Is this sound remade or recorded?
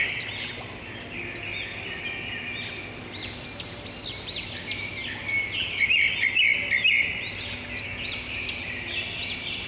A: recorded